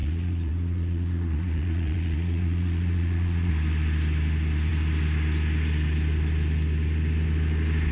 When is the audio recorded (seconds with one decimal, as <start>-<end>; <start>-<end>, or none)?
3.5-7.9